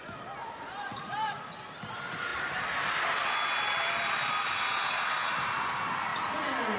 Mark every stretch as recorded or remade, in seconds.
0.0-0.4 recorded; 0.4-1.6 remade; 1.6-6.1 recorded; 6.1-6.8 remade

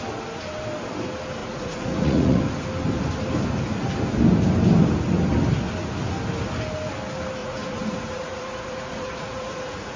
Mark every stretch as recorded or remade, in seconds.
0.0-1.4 recorded; 1.4-2.4 remade; 2.4-7.4 recorded; 7.4-10.0 remade